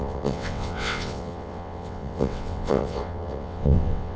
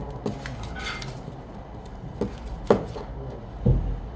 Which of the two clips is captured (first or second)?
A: second